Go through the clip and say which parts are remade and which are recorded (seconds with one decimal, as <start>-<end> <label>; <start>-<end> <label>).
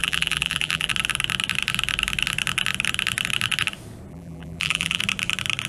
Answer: 0.0-0.9 remade; 0.9-4.1 recorded; 4.1-5.0 remade; 5.0-5.7 recorded